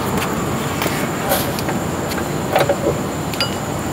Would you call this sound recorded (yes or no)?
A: yes